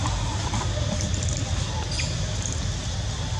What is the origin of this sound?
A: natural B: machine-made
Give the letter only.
A